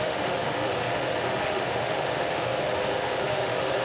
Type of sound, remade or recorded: remade